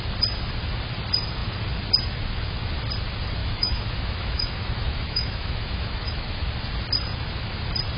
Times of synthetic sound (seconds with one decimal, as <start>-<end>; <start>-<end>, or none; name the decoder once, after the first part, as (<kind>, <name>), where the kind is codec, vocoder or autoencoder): 3.4-6.5 (autoencoder, DAC-VAE)